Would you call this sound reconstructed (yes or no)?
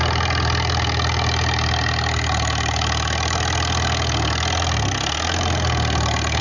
no